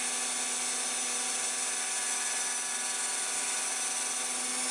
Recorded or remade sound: recorded